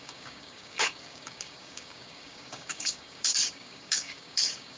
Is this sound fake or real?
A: fake